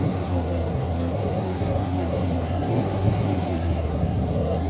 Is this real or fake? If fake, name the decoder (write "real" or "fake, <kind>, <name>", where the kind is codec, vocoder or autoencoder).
fake, codec, SNAC